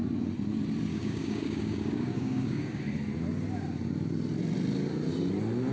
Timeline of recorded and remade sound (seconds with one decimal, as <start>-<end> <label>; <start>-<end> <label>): 0.0-0.9 recorded; 0.9-2.8 remade; 2.8-5.7 recorded